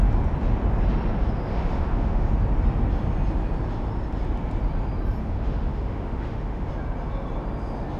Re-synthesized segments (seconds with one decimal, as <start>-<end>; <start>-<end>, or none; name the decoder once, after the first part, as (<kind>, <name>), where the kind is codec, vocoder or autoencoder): 1.5-2.3 (autoencoder, DAC-VAE); 5.2-6.7